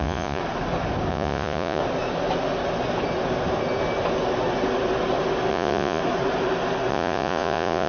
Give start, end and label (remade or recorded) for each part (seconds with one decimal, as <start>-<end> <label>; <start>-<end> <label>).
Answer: 0.0-0.4 remade; 0.4-1.1 recorded; 1.1-1.8 remade; 1.8-5.5 recorded; 5.5-6.0 remade; 6.0-6.9 recorded; 6.9-7.9 remade